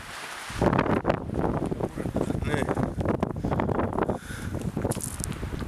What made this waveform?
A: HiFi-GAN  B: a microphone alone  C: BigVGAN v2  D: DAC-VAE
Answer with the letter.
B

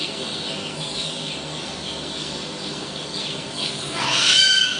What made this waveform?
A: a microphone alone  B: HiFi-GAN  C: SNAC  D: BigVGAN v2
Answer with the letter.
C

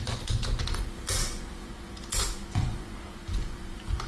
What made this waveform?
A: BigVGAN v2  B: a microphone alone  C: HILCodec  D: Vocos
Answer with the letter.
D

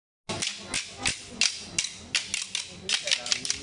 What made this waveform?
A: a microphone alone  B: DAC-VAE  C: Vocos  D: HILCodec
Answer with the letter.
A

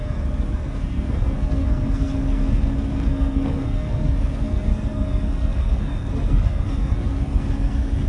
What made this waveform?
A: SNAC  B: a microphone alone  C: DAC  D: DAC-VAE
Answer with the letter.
A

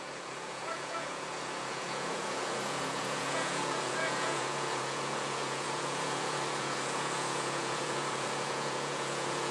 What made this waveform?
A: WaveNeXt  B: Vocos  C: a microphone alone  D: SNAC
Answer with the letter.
B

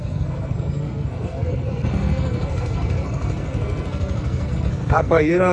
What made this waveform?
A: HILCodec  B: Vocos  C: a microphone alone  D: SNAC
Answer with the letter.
D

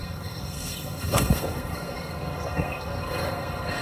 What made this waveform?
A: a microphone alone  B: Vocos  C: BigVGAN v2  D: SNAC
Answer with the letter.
D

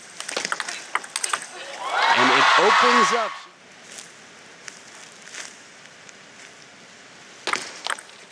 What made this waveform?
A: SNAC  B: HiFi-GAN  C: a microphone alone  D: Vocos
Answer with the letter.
C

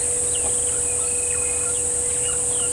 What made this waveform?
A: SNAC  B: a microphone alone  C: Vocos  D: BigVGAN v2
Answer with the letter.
B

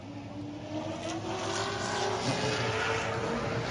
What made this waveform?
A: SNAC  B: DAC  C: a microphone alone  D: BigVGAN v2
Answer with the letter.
C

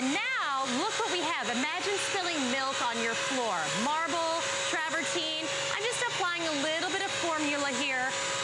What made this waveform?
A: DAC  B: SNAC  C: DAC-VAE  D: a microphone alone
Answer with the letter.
D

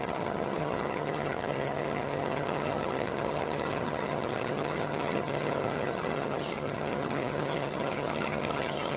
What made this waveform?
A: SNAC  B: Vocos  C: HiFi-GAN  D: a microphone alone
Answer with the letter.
C